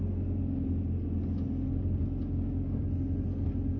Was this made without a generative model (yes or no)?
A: yes